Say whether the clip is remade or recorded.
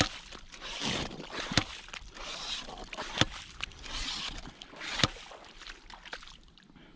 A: recorded